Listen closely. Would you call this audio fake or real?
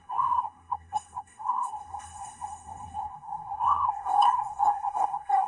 fake